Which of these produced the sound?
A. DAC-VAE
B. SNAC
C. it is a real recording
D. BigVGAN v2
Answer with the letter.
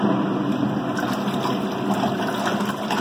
C